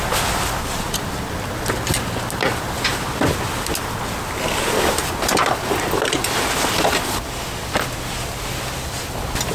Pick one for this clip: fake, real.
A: real